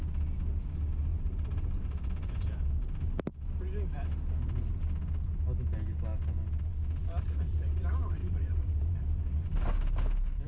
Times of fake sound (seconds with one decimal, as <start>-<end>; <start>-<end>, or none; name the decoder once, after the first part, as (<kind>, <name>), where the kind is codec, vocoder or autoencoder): 1.1-3.2 (vocoder, BigVGAN v2); 8.2-9.0